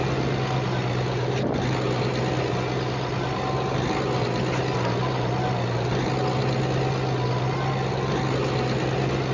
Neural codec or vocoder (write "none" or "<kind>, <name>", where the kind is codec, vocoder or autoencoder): none